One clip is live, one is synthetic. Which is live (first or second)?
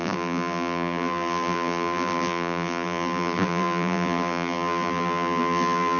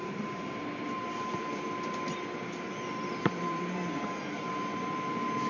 second